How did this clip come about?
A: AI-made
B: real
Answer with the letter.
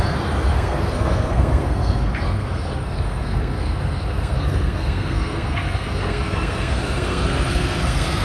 A